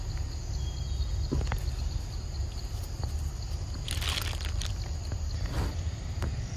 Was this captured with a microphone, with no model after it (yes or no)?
yes